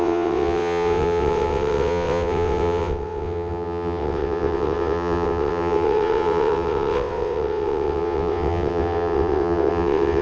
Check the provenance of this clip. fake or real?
fake